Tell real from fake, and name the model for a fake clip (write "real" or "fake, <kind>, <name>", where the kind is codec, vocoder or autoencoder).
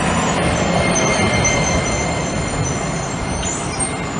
real